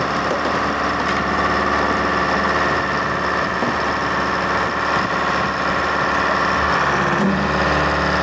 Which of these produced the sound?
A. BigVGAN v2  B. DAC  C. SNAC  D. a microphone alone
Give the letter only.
D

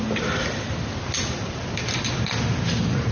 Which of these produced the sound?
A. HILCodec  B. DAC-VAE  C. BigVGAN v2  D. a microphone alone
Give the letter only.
D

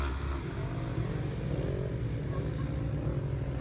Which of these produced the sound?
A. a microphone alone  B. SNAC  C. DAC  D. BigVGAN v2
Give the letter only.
A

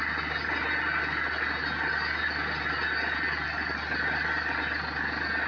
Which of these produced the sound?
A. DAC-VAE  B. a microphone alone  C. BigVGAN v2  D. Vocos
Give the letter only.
B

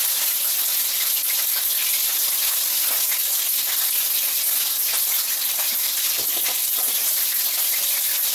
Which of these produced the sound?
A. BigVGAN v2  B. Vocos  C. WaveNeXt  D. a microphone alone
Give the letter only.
D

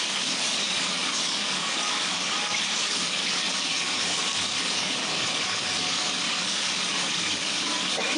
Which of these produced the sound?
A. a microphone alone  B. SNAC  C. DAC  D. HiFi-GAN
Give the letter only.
C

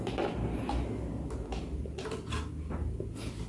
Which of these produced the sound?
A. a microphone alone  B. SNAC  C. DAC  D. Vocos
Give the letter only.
A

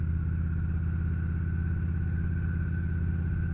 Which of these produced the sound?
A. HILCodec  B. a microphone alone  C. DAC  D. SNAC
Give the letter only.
B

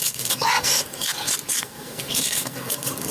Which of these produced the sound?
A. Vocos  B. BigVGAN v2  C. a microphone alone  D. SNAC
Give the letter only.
D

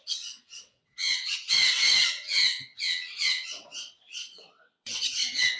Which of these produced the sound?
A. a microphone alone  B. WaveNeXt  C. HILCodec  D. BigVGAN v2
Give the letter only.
B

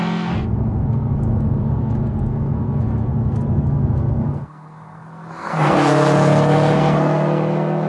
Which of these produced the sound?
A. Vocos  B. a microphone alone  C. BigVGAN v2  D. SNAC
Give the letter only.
D